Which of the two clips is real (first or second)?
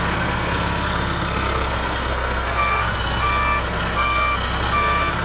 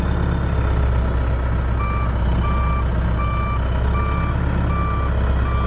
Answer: second